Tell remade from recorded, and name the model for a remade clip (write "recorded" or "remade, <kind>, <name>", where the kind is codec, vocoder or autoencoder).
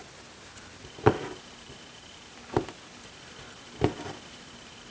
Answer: recorded